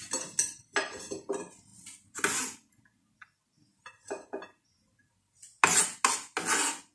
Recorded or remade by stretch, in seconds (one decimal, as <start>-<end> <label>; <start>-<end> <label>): 0.0-6.9 recorded